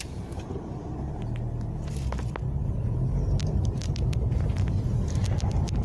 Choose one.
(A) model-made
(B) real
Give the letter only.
B